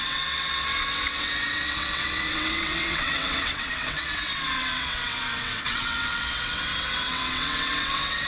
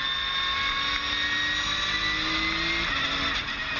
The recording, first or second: second